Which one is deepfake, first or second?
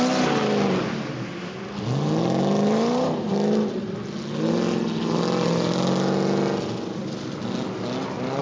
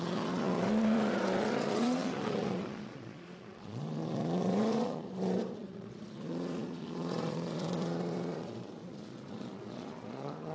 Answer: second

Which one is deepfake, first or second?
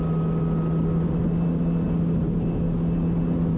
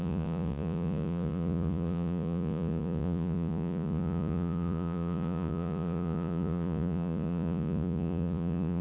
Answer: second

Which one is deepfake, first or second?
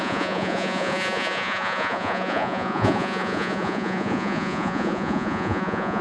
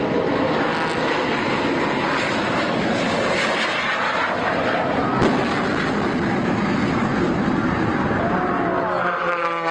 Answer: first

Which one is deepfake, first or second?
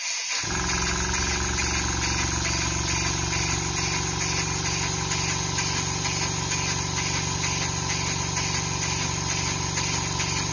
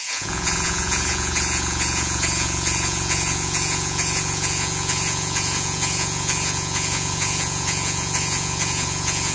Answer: second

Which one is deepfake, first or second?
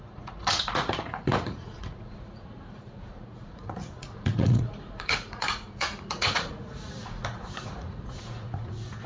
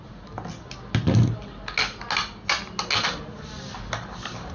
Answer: first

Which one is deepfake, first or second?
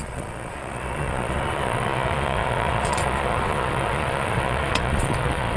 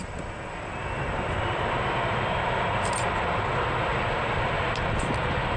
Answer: first